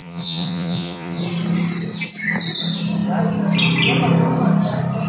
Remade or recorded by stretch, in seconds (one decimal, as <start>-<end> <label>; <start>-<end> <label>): 0.0-1.2 remade; 1.2-5.1 recorded